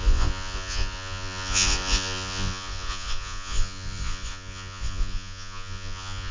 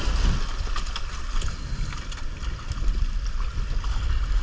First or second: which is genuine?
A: second